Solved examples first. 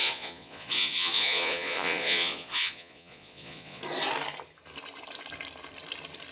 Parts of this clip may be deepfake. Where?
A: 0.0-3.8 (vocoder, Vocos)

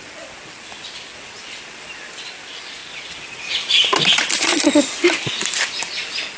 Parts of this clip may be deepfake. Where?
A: 0.0-2.8 (vocoder, BigVGAN v2); 5.5-6.4

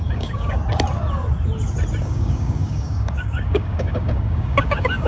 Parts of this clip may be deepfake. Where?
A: 0.0-0.6 (codec, DAC); 2.0-5.1

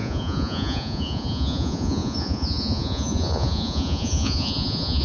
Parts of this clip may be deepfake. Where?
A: 0.0-5.0 (vocoder, Vocos)

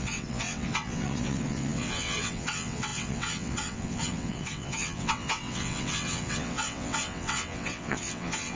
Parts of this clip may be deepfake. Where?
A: 0.0-8.6 (vocoder, WaveNeXt)

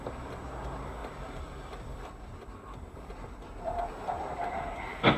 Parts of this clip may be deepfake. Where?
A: 1.0-3.8 (vocoder, BigVGAN v2)

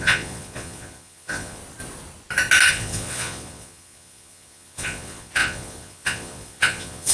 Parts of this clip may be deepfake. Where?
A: 0.0-1.6 (vocoder, Vocos); 2.7-7.1